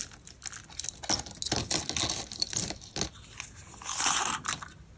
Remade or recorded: recorded